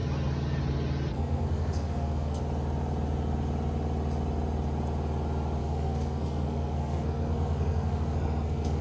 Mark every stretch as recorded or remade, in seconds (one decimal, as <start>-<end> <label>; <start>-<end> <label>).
0.0-1.1 recorded; 1.1-2.4 remade; 2.4-5.6 recorded; 5.6-8.8 remade